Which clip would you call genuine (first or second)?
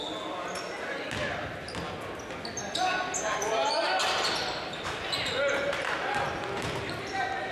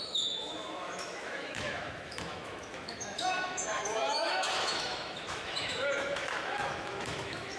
first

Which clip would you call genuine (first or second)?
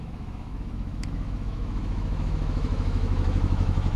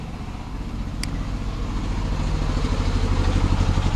second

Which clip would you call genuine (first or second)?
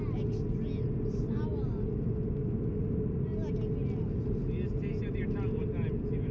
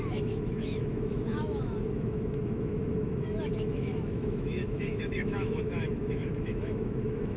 first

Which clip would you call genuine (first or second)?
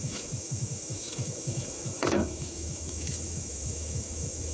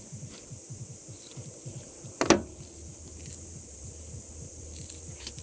second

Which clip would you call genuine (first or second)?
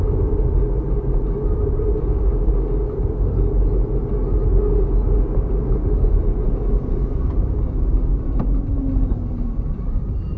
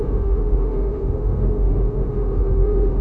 first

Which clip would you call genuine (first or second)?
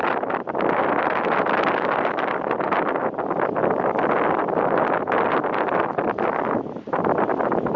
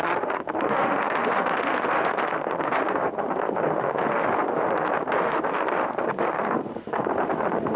first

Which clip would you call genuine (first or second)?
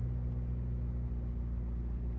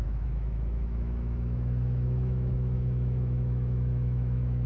first